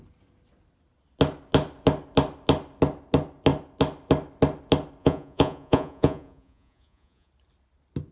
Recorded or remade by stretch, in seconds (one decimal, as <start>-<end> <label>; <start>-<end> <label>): 0.0-5.0 recorded; 5.0-7.3 remade; 7.3-8.1 recorded